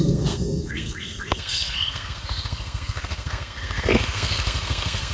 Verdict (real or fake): fake